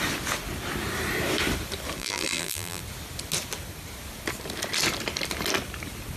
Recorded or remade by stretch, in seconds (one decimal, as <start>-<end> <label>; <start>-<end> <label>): 0.0-2.0 recorded; 2.0-2.8 remade; 2.8-6.2 recorded